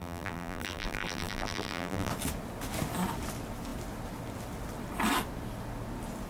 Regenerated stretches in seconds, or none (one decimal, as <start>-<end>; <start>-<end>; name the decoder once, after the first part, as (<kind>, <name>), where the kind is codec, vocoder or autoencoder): 0.0-2.1 (vocoder, BigVGAN v2)